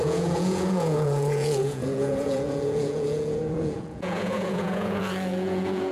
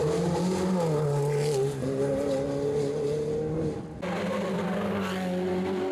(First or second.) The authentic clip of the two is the second